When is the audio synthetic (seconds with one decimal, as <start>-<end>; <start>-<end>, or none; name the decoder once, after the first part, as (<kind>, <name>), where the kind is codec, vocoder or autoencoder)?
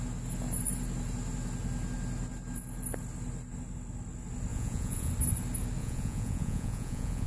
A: 4.5-5.1 (vocoder, Vocos); 5.8-7.3